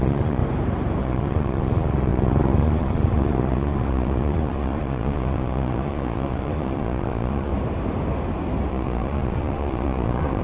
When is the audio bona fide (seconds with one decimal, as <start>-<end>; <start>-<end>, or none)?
0.4-1.0; 7.5-8.7